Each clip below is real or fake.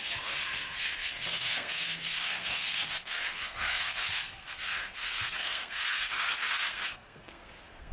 fake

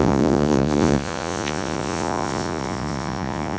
fake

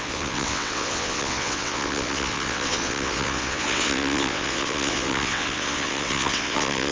fake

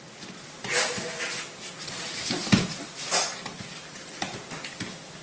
real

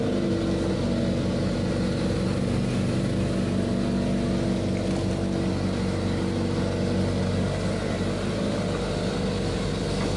real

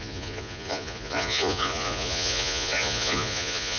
fake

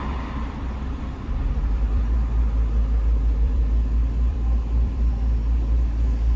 fake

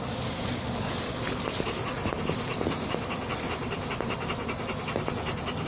real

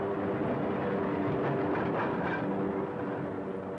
real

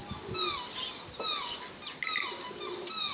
real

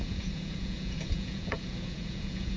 fake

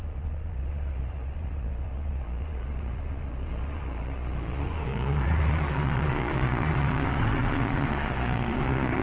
fake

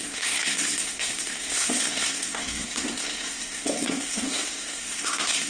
fake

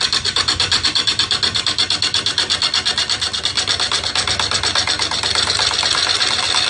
real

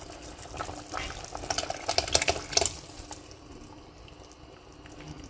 real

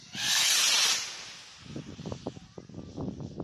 real